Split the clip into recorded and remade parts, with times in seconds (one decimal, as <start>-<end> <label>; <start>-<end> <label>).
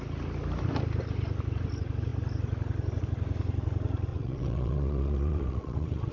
0.0-4.1 recorded; 4.1-6.1 remade